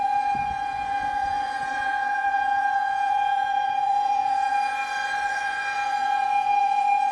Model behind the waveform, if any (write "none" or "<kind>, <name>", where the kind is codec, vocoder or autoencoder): vocoder, Vocos